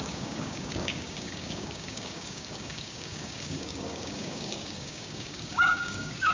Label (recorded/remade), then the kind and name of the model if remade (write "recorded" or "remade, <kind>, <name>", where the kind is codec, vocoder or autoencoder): remade, codec, DAC